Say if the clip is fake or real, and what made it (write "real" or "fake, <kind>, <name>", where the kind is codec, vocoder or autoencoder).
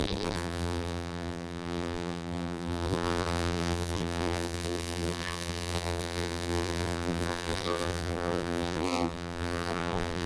fake, vocoder, BigVGAN v2